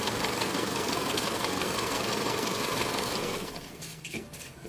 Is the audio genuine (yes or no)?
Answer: no